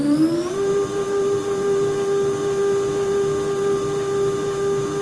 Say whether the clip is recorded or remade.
recorded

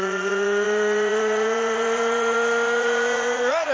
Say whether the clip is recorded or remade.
remade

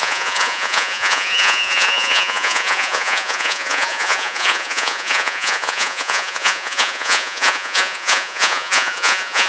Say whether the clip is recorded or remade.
remade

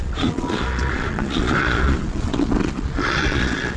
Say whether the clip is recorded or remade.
remade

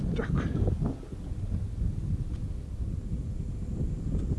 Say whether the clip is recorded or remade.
recorded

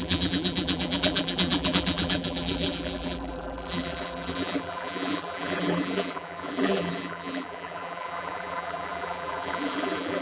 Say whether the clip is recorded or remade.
remade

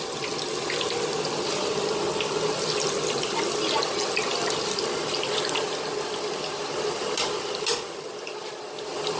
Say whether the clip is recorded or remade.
recorded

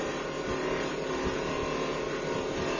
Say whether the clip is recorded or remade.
recorded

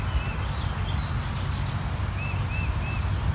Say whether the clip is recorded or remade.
recorded